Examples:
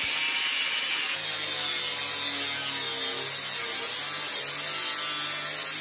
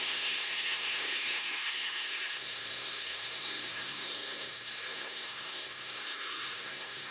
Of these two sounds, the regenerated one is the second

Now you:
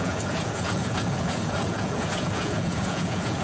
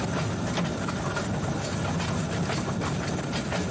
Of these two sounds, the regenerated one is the first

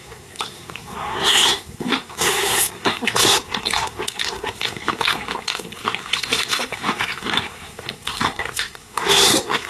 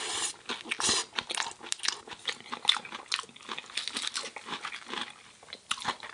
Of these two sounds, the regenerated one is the first